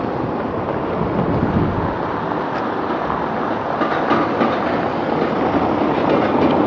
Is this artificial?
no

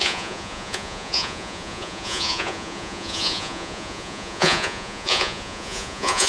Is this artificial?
yes